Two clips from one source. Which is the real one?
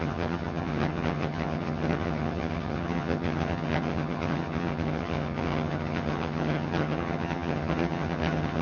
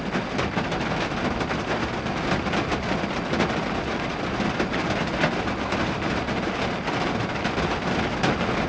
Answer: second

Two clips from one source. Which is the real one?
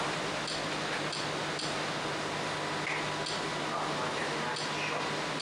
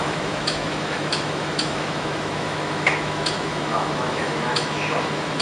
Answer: first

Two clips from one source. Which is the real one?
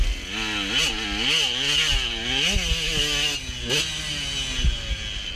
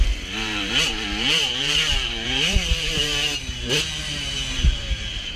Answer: first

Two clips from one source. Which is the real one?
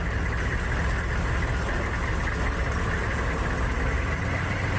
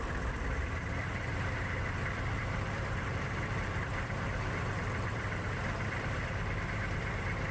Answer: first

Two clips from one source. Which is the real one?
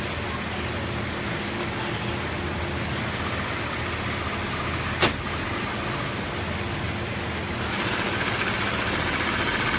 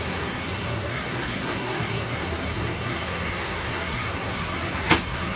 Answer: first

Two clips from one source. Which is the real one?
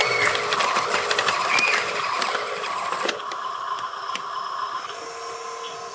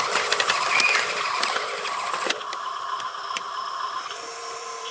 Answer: first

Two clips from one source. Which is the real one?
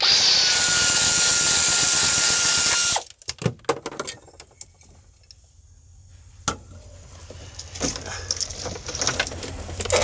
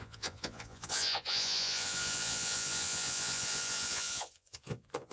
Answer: first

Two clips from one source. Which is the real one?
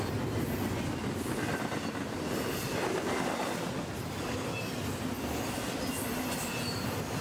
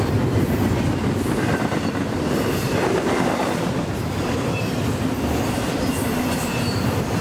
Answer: first